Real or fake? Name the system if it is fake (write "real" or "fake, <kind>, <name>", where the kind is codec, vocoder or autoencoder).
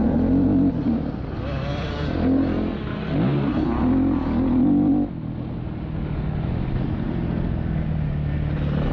real